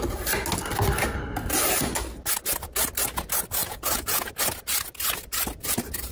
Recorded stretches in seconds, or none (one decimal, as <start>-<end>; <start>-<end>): 0.0-3.6; 4.3-6.1